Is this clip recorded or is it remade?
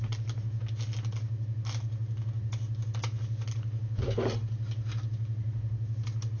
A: recorded